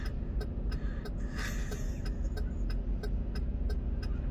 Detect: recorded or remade recorded